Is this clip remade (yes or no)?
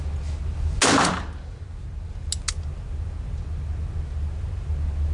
no